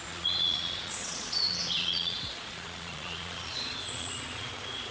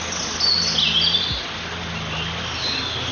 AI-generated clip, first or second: first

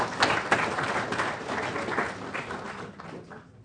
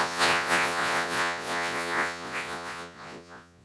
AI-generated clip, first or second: second